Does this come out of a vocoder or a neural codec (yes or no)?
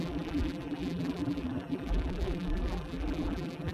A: yes